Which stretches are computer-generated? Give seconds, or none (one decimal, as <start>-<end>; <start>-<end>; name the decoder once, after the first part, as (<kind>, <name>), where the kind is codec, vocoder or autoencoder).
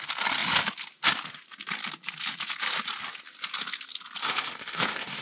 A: 4.2-5.2 (autoencoder, DAC-VAE)